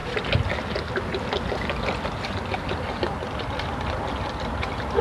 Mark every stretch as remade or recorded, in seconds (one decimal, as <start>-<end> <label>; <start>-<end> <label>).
0.0-5.0 recorded